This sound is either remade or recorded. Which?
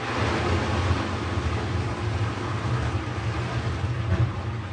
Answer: recorded